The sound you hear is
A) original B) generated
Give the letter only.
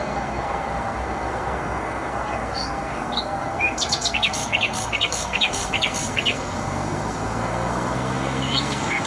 B